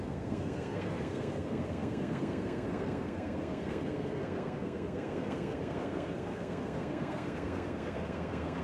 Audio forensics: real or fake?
fake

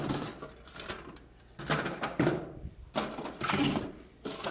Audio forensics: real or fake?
fake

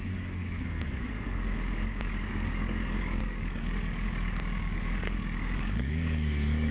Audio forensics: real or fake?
fake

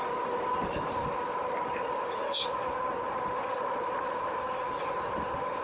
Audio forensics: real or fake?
real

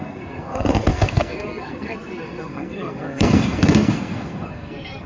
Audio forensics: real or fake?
fake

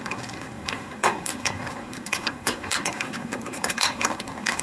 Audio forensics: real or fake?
fake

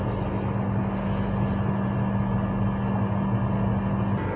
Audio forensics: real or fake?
real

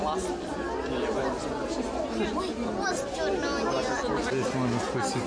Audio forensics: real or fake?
real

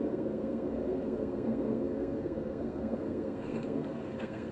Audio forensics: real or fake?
fake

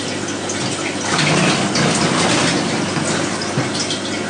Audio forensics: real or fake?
real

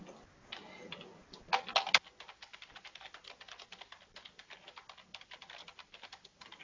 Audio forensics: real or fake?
real